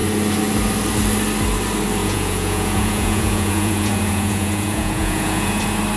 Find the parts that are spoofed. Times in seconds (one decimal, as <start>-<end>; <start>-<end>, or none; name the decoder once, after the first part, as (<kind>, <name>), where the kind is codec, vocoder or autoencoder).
2.0-5.6 (vocoder, Vocos)